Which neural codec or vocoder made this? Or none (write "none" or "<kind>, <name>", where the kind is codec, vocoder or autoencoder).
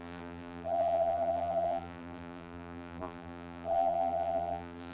vocoder, BigVGAN v2